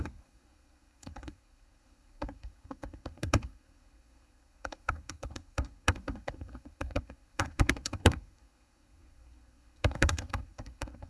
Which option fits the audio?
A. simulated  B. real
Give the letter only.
A